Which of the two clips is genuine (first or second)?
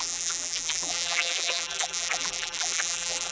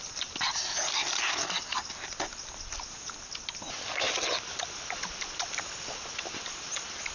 second